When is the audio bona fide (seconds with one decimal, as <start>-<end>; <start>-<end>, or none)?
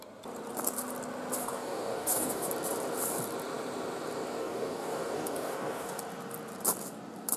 0.0-1.4; 2.5-4.4; 6.0-7.4